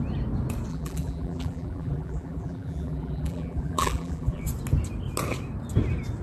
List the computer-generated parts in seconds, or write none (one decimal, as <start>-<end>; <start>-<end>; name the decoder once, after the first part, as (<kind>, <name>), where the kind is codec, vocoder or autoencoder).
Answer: 0.7-4.4 (vocoder, BigVGAN v2)